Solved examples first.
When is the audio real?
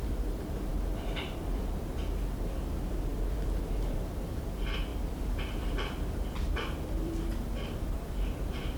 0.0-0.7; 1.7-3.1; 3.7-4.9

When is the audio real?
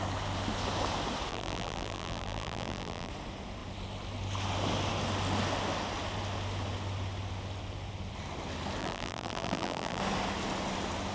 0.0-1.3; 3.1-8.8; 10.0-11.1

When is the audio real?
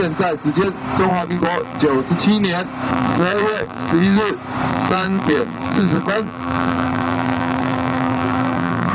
0.0-1.1; 1.8-2.9; 4.3-4.7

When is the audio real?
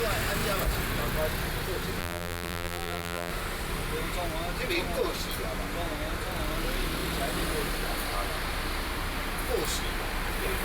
0.0-2.0; 3.3-10.6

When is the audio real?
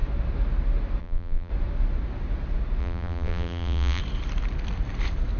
0.0-1.0; 1.5-2.8; 4.0-5.4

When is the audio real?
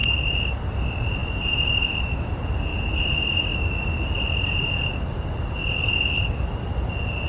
0.6-1.2; 1.9-7.3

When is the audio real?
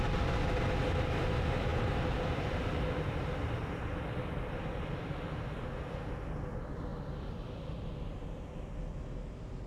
0.0-9.7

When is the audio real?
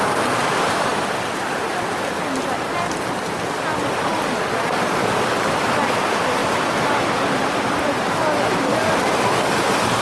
0.0-5.0; 5.7-6.4; 7.0-10.0